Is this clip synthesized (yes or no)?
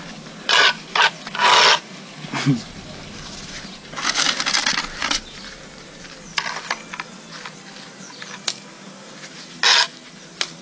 no